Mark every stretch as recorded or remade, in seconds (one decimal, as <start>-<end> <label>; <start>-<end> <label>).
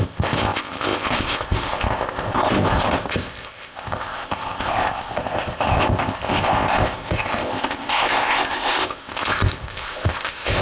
0.0-10.6 remade